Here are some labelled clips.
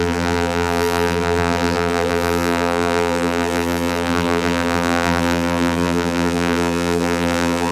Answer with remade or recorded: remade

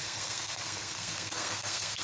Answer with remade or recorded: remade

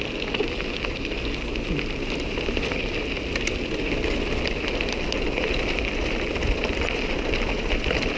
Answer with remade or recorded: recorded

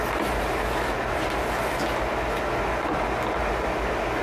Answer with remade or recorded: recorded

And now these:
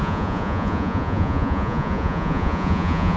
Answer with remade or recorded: remade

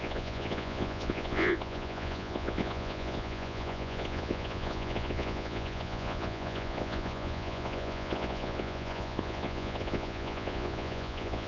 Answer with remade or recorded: remade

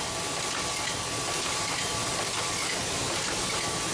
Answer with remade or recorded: recorded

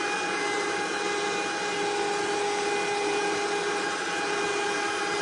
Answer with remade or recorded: recorded